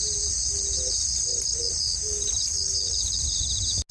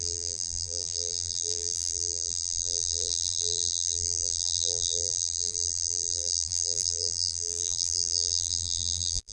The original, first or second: first